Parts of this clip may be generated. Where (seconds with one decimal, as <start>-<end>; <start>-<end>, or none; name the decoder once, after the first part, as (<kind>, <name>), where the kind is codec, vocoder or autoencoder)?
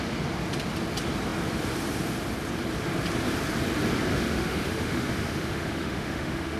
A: 4.1-6.6 (autoencoder, DAC-VAE)